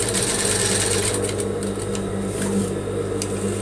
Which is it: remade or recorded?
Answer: recorded